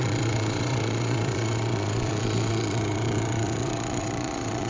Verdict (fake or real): fake